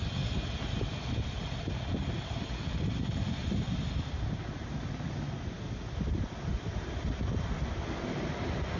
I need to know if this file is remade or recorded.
recorded